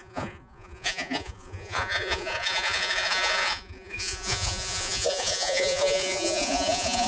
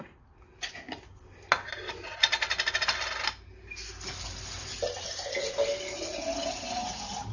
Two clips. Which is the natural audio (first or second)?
second